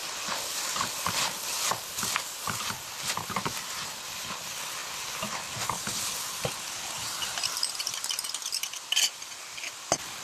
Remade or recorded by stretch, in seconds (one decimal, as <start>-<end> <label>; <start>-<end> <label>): 0.0-10.2 recorded